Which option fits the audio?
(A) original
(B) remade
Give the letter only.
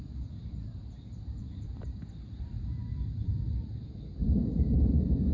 B